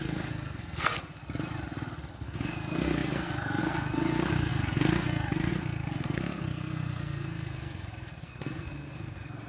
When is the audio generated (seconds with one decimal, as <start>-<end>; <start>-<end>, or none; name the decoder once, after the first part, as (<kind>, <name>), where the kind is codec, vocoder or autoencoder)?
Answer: 0.0-0.9 (codec, SNAC); 2.1-9.5